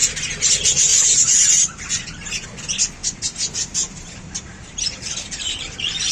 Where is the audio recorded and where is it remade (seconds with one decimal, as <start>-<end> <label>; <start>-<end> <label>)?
0.0-0.9 recorded; 0.9-2.0 remade; 2.0-3.0 recorded; 3.0-5.1 remade; 5.1-6.1 recorded